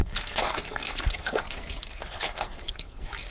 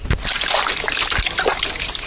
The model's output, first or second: first